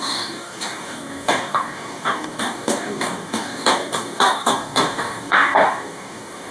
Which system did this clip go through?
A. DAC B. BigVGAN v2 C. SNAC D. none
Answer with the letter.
A